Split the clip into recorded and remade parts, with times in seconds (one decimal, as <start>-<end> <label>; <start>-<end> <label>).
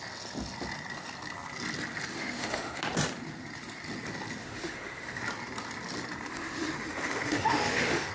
0.0-2.1 recorded; 2.1-2.8 remade; 2.8-4.4 recorded; 4.4-5.2 remade; 5.2-6.3 recorded; 6.3-8.1 remade